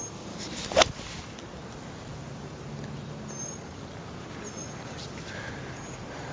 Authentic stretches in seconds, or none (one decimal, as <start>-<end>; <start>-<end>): 0.0-6.3